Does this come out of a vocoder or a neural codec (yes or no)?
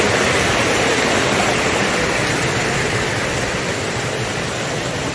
no